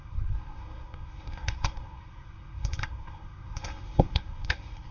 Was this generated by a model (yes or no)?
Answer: yes